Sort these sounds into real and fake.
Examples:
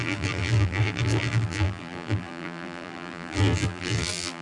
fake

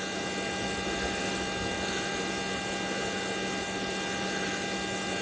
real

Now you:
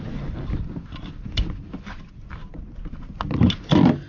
real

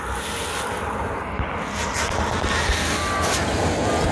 real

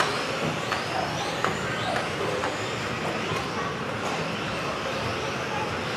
real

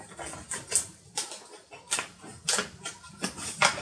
real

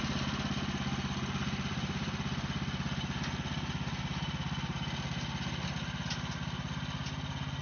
real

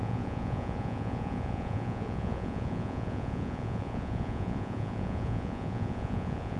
fake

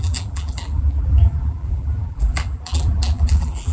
fake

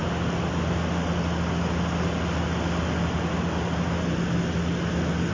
real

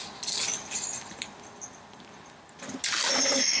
real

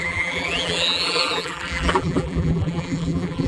fake